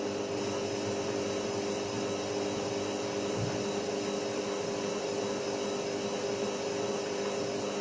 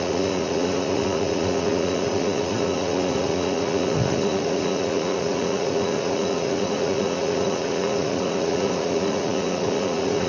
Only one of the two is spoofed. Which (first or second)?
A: second